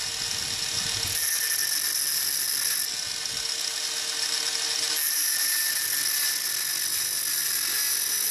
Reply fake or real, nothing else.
real